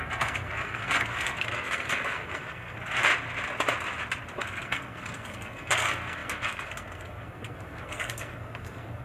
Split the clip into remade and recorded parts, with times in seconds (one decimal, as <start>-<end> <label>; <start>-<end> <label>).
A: 0.0-3.1 remade; 3.1-4.4 recorded; 4.4-9.0 remade